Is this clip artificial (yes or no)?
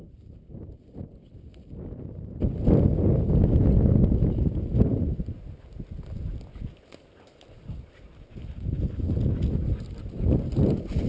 no